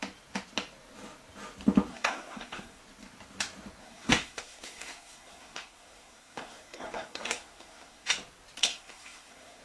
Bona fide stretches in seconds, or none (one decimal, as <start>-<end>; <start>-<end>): 0.0-1.9; 2.8-3.8; 8.1-8.6